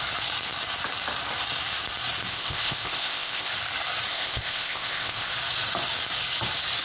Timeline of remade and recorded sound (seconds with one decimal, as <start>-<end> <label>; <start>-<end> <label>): 0.0-2.3 recorded; 2.3-3.5 remade; 3.5-4.1 recorded; 4.1-5.3 remade; 5.3-6.8 recorded